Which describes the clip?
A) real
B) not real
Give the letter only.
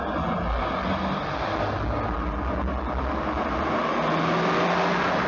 A